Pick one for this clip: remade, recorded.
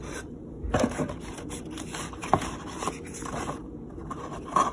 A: remade